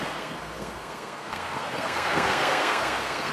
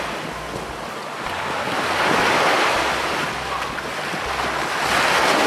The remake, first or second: first